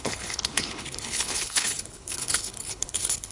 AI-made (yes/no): yes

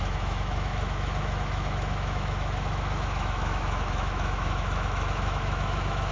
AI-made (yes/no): yes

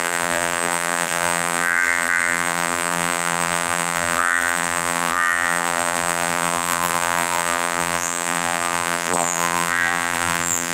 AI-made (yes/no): yes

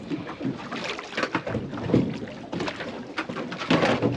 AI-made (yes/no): no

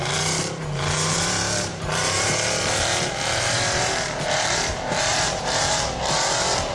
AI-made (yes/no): yes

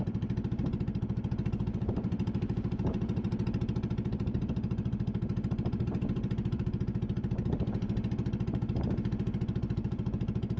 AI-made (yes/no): yes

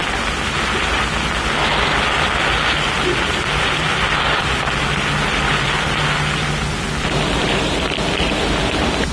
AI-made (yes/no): no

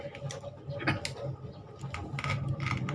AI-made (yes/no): no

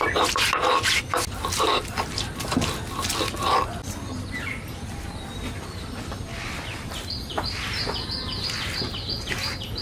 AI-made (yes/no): no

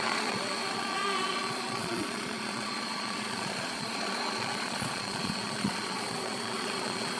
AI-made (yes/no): yes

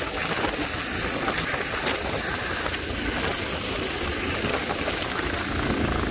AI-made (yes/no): no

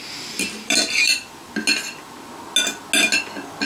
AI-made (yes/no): no